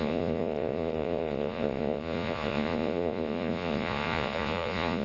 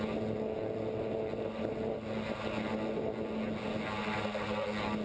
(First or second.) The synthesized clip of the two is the first